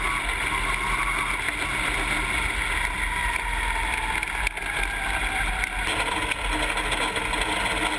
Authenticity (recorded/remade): recorded